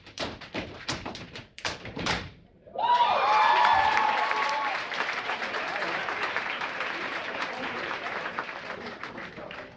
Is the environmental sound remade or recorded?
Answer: remade